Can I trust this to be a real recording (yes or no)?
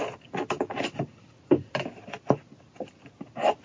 yes